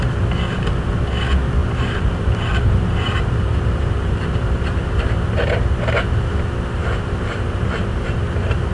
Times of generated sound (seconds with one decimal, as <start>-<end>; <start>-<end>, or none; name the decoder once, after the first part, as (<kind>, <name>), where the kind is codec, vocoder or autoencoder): 1.6-5.3 (vocoder, BigVGAN v2); 6.8-7.8